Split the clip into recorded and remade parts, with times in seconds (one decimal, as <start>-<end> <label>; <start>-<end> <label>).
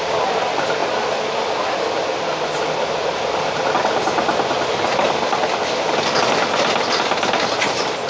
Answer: 0.0-8.1 recorded